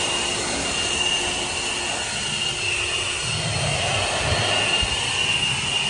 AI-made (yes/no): no